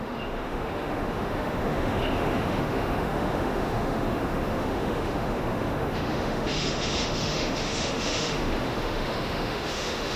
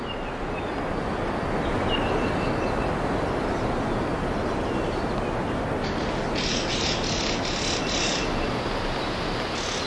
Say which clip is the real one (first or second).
second